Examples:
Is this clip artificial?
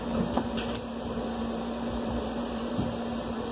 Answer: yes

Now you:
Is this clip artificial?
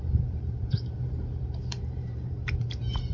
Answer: yes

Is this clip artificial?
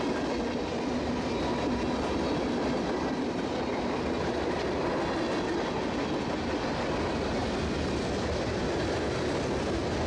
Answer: no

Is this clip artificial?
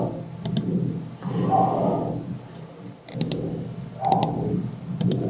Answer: no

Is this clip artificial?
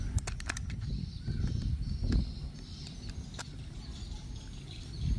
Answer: no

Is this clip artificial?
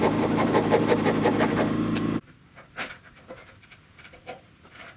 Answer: yes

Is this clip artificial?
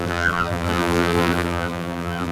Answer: yes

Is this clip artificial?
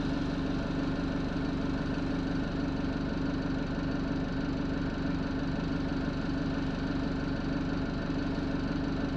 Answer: no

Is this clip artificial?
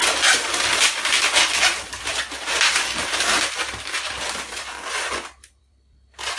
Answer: yes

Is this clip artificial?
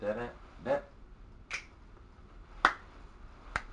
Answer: no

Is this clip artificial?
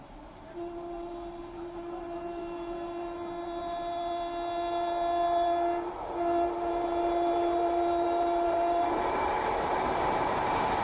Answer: yes